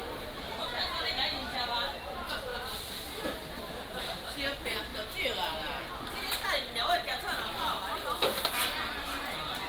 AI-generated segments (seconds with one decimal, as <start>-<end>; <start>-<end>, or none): 0.0-1.8; 2.5-4.1

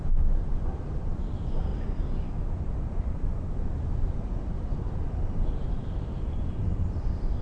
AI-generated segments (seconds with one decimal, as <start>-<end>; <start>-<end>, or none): 0.0-1.7; 3.6-7.4

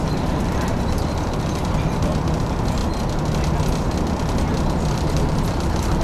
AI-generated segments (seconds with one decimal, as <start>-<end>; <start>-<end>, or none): 0.0-2.8; 4.9-6.0

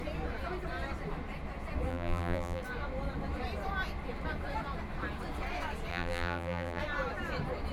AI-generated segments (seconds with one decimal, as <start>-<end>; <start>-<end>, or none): 1.9-2.6; 5.9-6.8

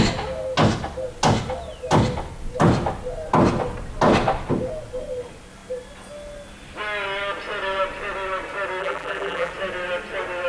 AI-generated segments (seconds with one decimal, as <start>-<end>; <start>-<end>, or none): 8.8-9.5

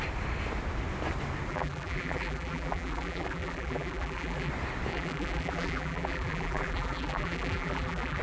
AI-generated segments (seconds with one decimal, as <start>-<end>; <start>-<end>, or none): 1.5-4.5; 4.9-8.2